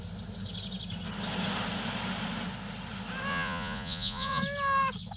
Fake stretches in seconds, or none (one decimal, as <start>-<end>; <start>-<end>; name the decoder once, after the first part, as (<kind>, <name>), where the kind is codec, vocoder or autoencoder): 3.3-4.4 (vocoder, Vocos)